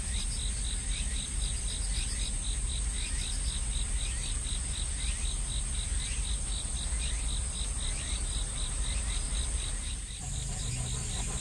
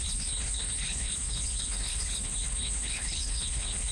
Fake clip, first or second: second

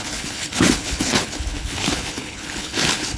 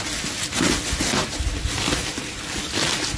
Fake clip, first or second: first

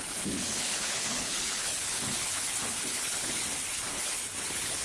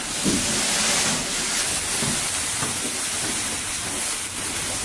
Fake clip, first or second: first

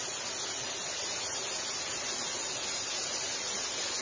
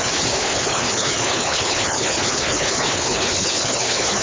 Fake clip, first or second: second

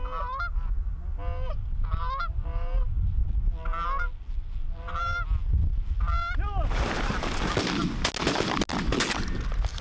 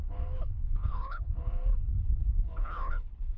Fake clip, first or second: second